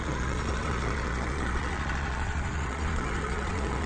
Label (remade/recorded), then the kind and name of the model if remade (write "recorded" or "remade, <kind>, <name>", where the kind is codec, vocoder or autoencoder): remade, vocoder, Vocos